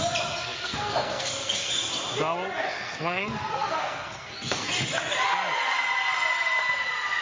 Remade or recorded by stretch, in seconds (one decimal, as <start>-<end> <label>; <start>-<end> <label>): 0.0-0.4 recorded; 0.4-1.7 remade; 1.7-2.6 recorded; 2.6-4.7 remade; 4.7-7.2 recorded